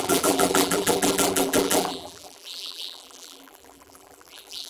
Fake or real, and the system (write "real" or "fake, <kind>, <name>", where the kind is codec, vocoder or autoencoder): fake, vocoder, BigVGAN v2